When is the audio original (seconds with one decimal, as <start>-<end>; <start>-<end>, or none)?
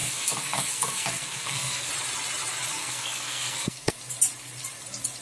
1.9-2.8; 4.0-5.2